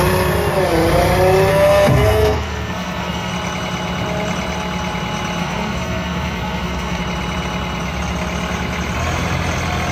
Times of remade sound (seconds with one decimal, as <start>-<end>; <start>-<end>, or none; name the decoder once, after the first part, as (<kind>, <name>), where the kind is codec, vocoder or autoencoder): 1.5-3.3 (codec, SNAC); 5.4-7.0